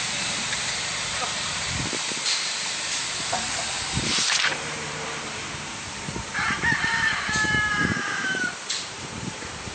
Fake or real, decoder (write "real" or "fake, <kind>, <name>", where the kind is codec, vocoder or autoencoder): fake, vocoder, BigVGAN v2